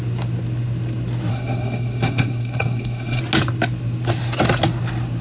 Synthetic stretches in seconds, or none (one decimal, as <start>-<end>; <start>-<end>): 1.3-3.2